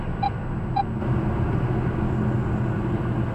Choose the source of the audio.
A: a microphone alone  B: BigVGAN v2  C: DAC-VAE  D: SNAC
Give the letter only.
A